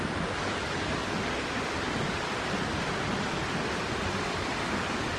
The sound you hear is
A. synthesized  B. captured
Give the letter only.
B